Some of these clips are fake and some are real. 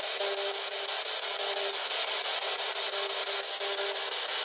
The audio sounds real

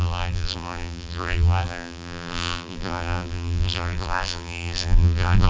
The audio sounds fake